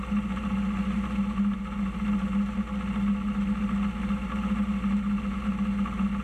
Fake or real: real